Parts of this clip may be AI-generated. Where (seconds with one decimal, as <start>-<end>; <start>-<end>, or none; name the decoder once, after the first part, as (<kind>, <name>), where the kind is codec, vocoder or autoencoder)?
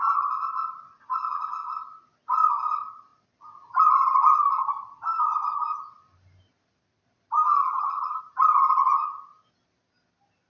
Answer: 7.6-8.2 (vocoder, HiFi-GAN)